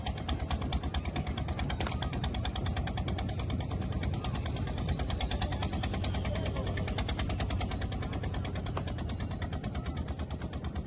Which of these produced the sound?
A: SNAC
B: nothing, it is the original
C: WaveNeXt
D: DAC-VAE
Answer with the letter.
B